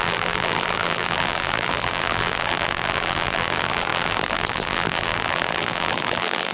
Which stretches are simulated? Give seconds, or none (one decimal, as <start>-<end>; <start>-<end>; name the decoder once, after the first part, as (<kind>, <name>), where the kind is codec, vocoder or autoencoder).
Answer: 0.0-6.5 (vocoder, BigVGAN v2)